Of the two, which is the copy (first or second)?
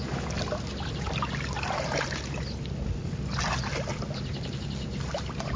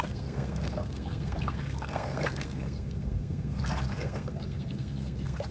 second